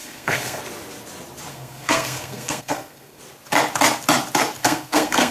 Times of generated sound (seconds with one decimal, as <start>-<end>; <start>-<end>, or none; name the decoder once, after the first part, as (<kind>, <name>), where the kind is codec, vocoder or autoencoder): 0.0-0.6 (codec, SNAC); 1.5-3.2; 4.6-5.3